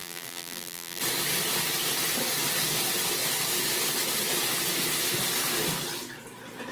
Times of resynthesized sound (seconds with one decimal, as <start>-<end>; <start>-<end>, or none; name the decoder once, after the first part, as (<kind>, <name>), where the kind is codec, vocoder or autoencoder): 0.0-1.0 (vocoder, BigVGAN v2)